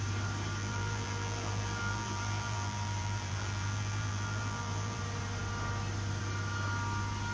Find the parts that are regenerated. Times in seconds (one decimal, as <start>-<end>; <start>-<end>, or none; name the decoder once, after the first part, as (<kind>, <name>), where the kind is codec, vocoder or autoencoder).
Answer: 0.6-5.0 (vocoder, BigVGAN v2)